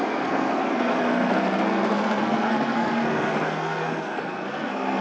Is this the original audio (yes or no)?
no